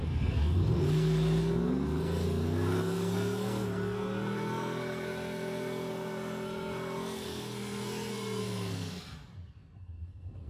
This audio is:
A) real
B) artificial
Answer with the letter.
B